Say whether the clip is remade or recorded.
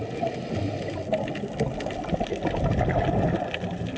recorded